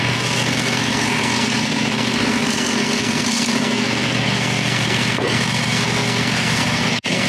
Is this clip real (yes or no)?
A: no